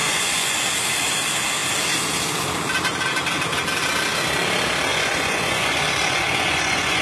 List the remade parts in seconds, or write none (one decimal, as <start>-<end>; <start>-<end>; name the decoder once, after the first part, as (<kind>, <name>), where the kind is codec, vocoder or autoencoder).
0.0-0.6 (vocoder, Vocos); 4.9-7.0